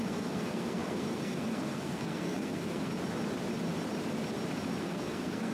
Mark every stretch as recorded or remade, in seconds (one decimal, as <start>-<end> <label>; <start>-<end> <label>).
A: 0.0-2.9 remade; 2.9-4.8 recorded; 4.8-5.5 remade